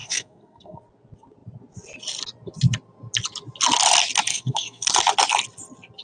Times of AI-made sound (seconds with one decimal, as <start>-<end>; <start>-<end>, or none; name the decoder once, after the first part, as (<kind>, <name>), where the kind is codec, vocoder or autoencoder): 0.0-0.8 (codec, SNAC); 4.3-4.9